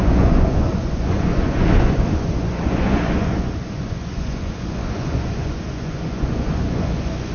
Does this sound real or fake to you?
fake